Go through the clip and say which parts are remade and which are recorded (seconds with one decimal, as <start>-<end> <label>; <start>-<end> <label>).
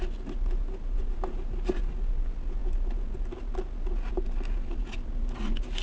0.0-0.6 recorded; 0.6-1.9 remade; 1.9-5.8 recorded